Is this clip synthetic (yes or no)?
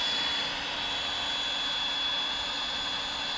no